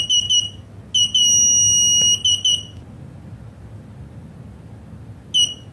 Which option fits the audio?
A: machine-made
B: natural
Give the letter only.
B